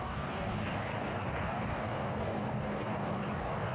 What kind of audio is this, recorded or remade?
remade